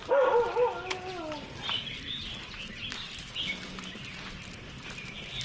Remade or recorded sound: recorded